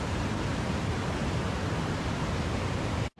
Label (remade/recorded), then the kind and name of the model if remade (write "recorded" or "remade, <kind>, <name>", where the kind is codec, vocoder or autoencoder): remade, vocoder, BigVGAN v2